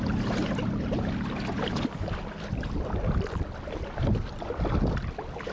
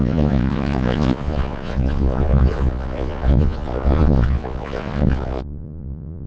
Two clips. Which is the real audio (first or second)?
first